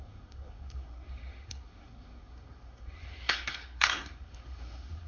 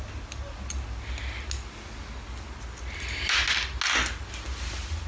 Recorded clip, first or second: second